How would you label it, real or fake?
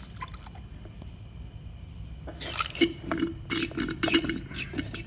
real